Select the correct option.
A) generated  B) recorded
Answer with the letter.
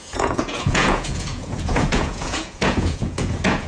A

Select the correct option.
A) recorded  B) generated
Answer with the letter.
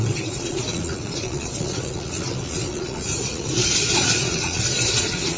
B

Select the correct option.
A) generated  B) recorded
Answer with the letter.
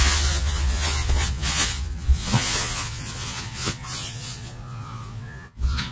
A